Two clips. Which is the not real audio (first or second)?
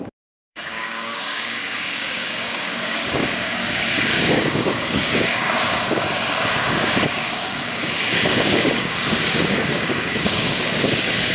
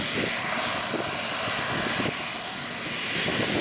first